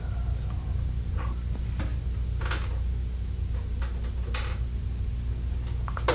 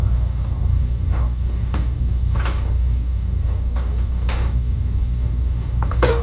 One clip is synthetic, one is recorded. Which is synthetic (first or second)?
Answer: second